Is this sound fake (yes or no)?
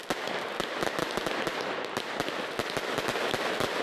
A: no